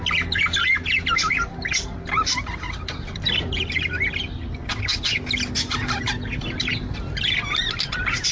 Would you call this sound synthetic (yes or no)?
no